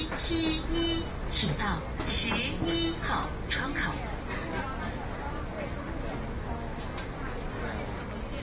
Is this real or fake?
real